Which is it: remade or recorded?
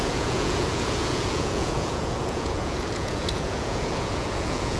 remade